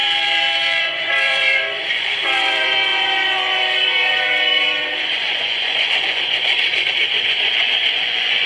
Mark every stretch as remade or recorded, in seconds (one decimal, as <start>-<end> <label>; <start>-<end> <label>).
0.0-0.8 recorded; 0.8-8.5 remade